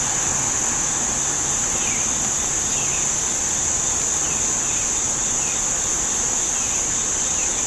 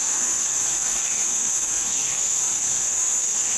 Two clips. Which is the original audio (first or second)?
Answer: first